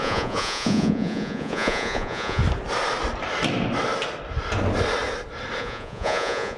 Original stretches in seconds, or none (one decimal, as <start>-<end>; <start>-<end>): 2.4-5.6